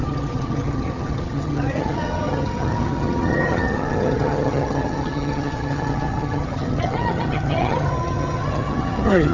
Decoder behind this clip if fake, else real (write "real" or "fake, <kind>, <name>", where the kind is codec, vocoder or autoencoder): fake, vocoder, HiFi-GAN